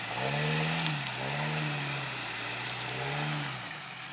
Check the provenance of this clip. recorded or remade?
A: recorded